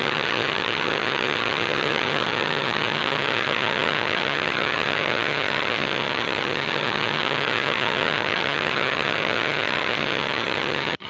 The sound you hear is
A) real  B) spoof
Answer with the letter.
B